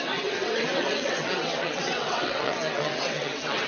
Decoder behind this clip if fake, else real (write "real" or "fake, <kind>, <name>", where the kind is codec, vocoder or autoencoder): fake, vocoder, WaveNeXt